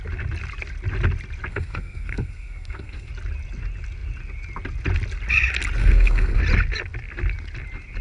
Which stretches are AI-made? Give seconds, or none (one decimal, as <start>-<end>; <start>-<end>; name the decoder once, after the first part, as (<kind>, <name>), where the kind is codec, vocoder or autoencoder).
1.5-3.1 (codec, SNAC); 5.8-6.4